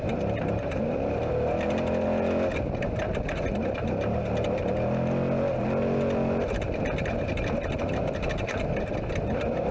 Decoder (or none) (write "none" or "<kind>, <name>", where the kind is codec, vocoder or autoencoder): none